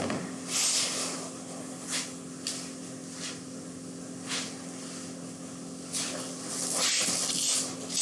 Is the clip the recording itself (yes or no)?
yes